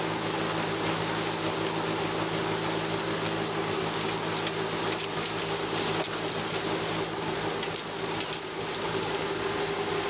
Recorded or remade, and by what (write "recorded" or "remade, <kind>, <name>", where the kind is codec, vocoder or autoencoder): recorded